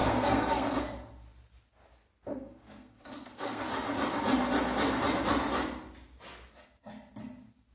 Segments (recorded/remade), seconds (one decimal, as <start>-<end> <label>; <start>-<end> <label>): 0.0-0.8 remade; 0.8-2.3 recorded; 2.3-3.6 remade; 3.6-7.7 recorded